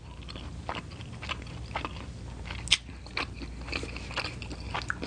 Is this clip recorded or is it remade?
recorded